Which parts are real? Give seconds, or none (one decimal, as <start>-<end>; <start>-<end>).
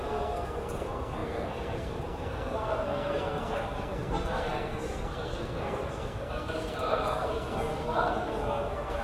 none